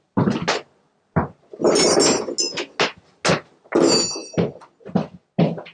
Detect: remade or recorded recorded